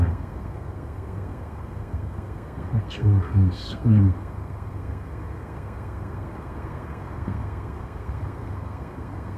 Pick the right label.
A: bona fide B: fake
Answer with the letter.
B